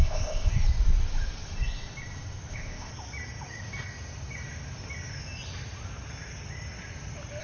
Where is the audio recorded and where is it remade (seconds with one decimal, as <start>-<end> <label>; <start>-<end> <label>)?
0.0-0.5 remade; 0.5-2.5 recorded; 2.5-2.9 remade; 2.9-7.4 recorded